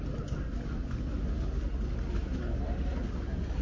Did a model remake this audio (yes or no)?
no